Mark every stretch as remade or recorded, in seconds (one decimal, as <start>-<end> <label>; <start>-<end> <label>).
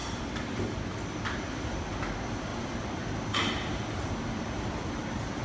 0.0-1.9 remade; 1.9-2.5 recorded; 2.5-5.4 remade